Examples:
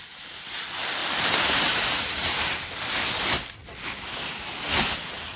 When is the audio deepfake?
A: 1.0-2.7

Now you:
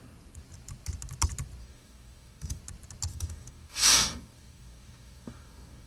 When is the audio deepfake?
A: 1.6-2.6; 3.1-5.9

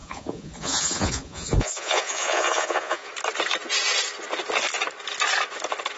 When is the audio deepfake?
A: 0.0-3.1

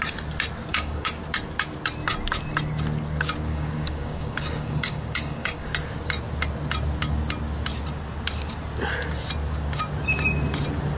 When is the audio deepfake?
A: 0.7-1.2; 3.5-5.7